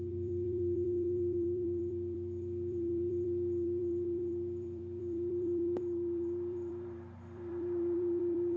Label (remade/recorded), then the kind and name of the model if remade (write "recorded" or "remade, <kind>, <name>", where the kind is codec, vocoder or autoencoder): remade, vocoder, BigVGAN v2